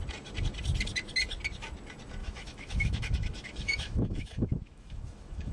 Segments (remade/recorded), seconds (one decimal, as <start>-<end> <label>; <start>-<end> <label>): 0.0-2.2 recorded; 2.2-5.5 remade